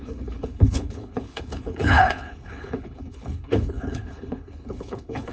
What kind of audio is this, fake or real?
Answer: fake